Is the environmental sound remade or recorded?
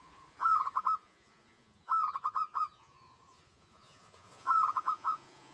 remade